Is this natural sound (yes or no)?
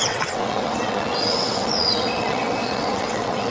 no